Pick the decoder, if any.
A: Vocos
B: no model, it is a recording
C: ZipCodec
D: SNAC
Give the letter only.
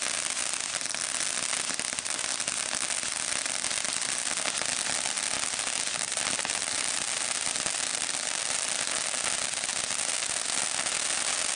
B